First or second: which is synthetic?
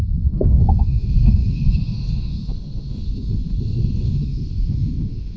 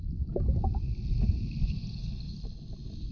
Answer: first